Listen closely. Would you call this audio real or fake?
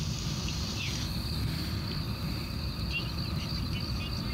real